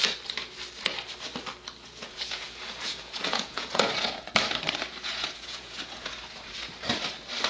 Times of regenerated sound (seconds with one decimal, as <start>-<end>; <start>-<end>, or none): 1.8-4.3; 4.9-6.1